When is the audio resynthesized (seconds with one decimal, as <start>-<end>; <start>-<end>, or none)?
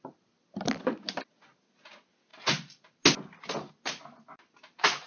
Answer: none